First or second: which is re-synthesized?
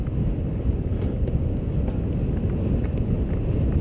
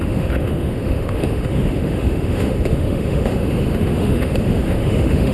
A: second